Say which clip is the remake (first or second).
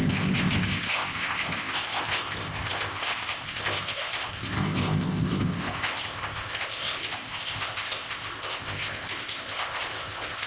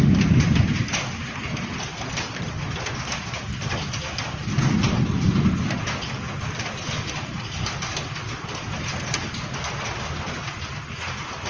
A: first